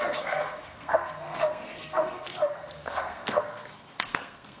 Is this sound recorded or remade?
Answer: remade